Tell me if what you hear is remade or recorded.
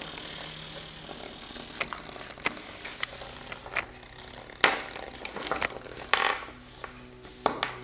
recorded